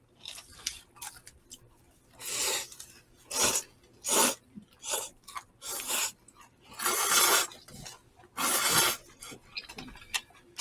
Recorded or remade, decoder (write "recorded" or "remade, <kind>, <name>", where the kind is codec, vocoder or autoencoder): recorded